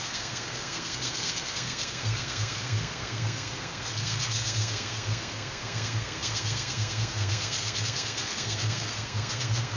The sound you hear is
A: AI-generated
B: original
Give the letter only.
A